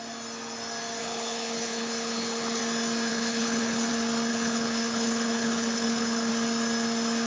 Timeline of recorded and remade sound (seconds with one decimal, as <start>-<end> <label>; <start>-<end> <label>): 0.0-1.0 recorded; 1.0-2.6 remade; 2.6-3.1 recorded; 3.1-3.9 remade; 3.9-4.3 recorded; 4.3-6.3 remade; 6.3-7.3 recorded